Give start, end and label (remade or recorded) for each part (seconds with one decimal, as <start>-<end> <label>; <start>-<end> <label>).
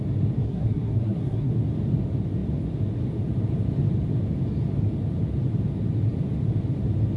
0.0-0.4 recorded; 0.4-1.5 remade; 1.5-7.2 recorded